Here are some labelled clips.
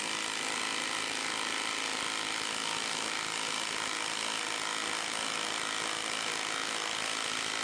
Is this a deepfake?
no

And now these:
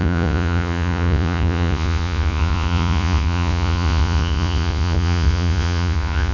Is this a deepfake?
yes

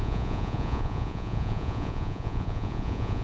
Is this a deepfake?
yes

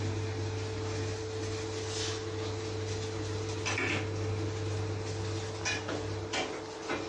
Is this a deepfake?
no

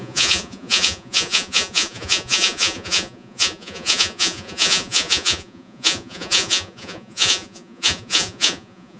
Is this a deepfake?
yes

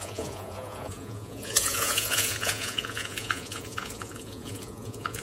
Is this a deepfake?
yes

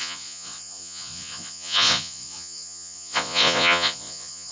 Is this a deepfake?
yes